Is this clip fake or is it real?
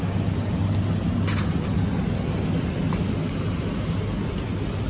real